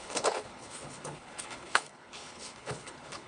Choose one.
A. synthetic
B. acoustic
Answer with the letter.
A